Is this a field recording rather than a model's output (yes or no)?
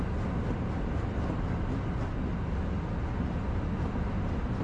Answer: yes